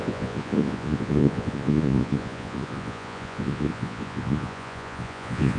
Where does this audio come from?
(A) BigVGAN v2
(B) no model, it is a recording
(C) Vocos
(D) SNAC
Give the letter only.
C